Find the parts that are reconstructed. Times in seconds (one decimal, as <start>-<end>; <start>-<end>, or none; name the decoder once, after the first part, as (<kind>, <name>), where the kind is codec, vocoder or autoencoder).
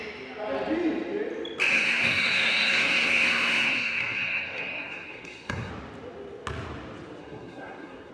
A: 1.7-5.7 (codec, SNAC); 7.2-8.1